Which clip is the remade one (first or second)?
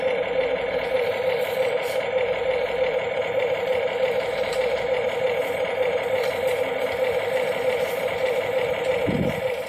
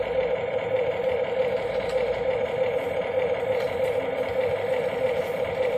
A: first